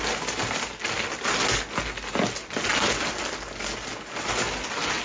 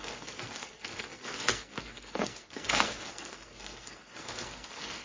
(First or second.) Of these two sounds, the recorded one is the first